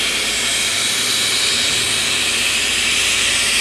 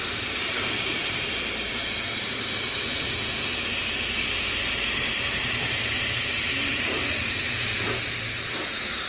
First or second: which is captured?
first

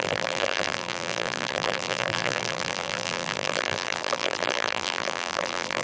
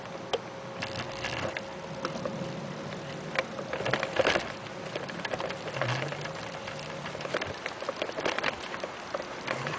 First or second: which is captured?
second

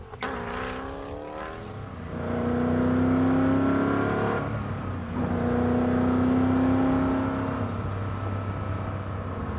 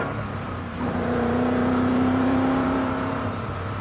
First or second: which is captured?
first